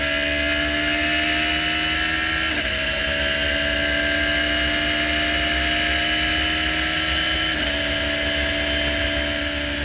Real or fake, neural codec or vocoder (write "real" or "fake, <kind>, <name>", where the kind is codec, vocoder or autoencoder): real